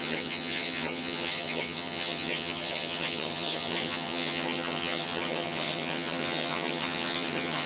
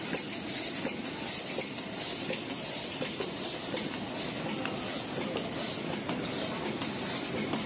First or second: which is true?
second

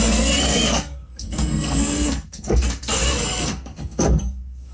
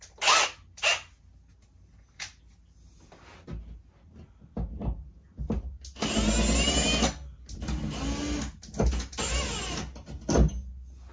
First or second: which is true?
second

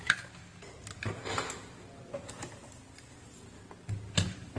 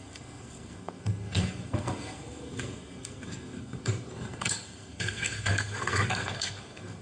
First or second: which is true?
first